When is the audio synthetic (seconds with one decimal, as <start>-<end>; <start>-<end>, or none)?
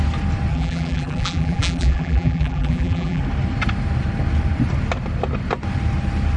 0.5-3.2